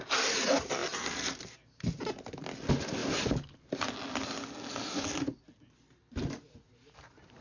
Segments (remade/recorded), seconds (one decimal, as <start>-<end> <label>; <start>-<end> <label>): 0.0-7.4 recorded